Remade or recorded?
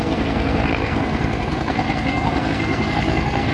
remade